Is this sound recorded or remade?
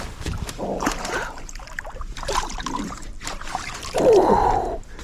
remade